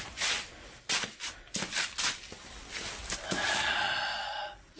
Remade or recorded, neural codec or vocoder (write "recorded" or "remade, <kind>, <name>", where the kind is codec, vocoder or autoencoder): recorded